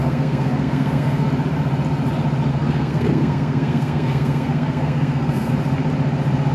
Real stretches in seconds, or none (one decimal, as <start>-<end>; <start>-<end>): 1.3-2.5; 5.5-6.5